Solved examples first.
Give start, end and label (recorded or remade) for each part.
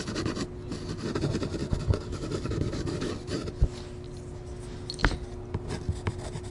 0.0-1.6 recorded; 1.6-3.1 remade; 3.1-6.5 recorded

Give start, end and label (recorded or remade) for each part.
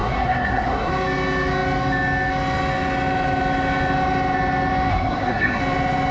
0.0-0.9 remade; 0.9-4.9 recorded; 4.9-5.6 remade; 5.6-6.1 recorded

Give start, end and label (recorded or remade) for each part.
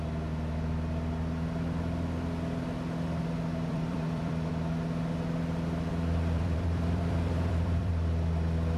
0.0-3.7 recorded; 3.7-4.5 remade; 4.5-5.9 recorded; 5.9-7.9 remade; 7.9-8.8 recorded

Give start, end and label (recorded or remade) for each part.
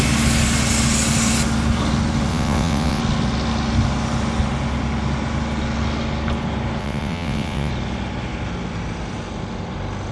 0.0-2.3 recorded; 2.3-3.0 remade; 3.0-6.8 recorded; 6.8-7.7 remade; 7.7-10.1 recorded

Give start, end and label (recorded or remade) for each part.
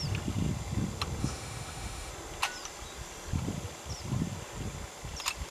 0.0-1.2 recorded; 1.2-2.1 remade; 2.1-5.5 recorded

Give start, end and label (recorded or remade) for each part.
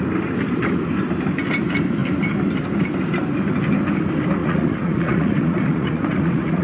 0.0-4.4 recorded; 4.4-6.6 remade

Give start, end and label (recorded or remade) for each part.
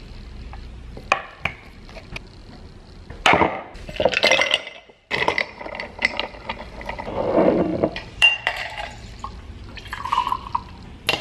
0.0-7.7 recorded; 7.7-10.3 remade; 10.3-11.2 recorded